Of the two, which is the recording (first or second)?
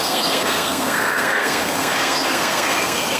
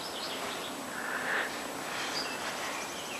second